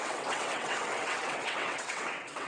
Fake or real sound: fake